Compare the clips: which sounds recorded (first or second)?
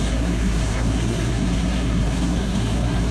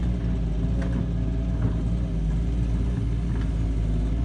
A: second